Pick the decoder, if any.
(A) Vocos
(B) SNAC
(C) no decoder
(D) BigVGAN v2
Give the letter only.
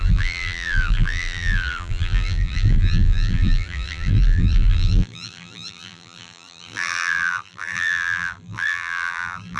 D